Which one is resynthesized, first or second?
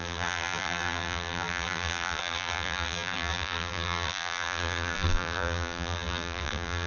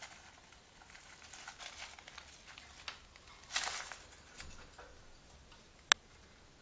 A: first